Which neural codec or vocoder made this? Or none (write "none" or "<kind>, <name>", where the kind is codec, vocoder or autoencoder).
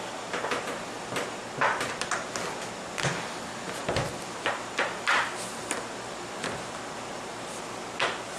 none